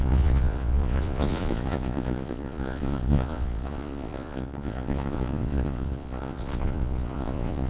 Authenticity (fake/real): fake